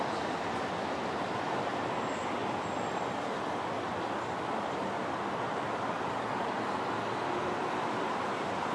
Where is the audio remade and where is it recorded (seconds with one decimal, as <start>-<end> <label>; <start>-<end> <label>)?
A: 0.0-8.7 recorded